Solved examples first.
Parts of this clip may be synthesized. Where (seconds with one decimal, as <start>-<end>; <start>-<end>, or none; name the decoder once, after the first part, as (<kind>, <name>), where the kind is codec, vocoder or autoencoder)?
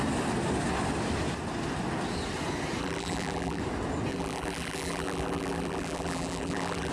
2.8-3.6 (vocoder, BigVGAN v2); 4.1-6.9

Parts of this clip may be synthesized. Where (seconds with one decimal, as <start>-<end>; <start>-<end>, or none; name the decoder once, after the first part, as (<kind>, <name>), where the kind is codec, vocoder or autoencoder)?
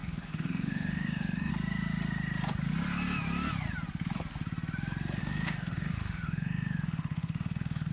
0.0-1.5 (autoencoder, DAC-VAE); 5.2-7.9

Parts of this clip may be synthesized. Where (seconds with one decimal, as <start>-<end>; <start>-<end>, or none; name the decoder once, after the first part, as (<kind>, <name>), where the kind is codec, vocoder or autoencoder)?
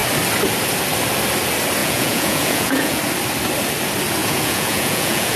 1.8-3.0 (vocoder, Vocos); 4.2-5.4